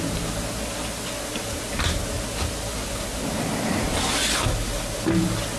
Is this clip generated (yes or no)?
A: no